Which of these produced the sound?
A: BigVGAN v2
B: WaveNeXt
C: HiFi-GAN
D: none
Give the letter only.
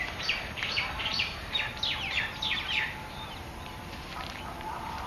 A